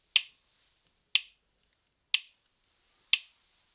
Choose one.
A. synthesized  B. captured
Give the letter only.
B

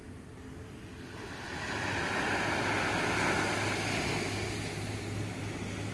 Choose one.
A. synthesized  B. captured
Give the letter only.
B